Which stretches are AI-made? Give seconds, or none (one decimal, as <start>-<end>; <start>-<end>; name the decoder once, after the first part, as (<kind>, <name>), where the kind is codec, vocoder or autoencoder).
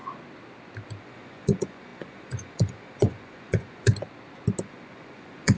1.0-3.9 (vocoder, Vocos); 4.6-5.6